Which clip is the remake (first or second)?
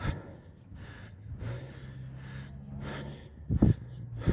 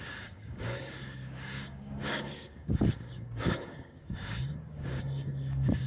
second